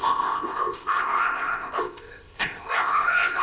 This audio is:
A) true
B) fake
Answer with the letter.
B